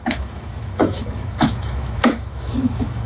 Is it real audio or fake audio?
fake